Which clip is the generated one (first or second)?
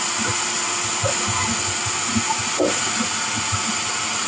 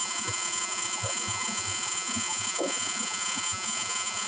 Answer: second